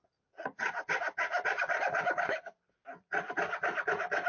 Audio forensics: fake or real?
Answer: real